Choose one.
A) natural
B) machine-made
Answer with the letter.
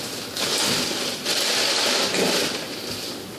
A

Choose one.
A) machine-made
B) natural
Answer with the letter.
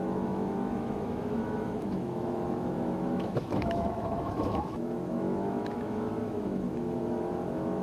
A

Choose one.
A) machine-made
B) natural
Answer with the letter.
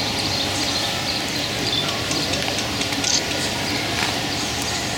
A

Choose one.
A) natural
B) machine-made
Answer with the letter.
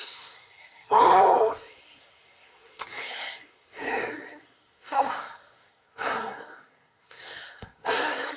B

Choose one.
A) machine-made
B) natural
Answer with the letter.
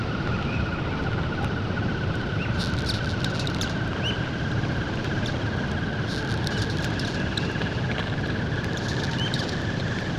B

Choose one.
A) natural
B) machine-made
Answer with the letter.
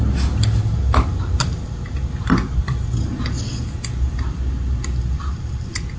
A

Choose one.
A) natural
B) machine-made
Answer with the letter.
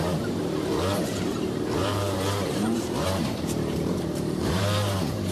B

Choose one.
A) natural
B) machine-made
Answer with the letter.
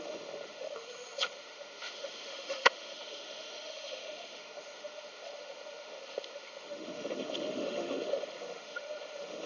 B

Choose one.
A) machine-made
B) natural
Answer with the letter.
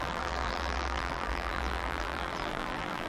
A